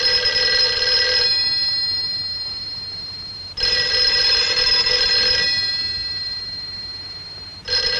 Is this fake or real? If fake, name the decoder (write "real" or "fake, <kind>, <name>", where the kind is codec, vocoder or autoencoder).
real